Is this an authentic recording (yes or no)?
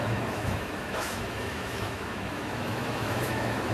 no